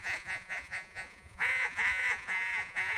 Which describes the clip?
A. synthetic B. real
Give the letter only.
A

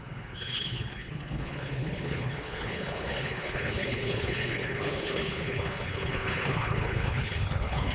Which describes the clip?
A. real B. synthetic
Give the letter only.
B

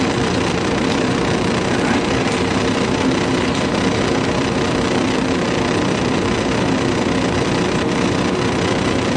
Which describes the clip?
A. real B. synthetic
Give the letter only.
B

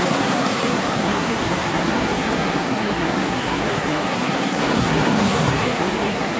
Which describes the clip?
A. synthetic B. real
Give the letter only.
A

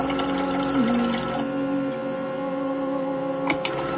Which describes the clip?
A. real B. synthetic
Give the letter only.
A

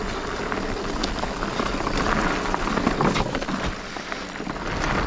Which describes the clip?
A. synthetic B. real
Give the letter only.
B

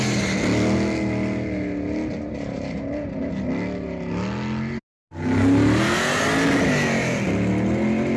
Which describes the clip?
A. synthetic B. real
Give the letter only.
B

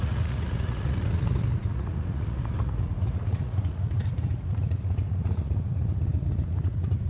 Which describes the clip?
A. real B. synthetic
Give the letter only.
B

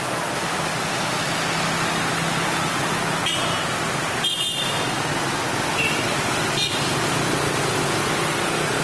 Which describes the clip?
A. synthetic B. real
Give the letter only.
B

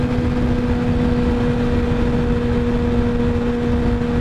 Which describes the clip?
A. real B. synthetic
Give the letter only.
A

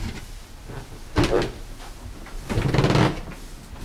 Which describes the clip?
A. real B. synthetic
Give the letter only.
A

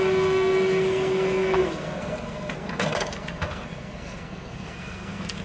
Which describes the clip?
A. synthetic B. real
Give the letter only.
A